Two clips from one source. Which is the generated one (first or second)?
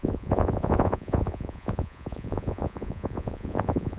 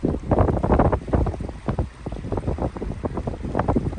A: first